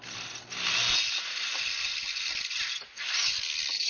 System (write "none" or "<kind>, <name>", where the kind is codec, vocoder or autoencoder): none